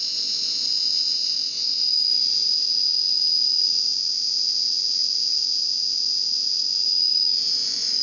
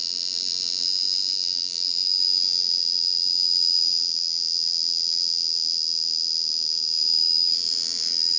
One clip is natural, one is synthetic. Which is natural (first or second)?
second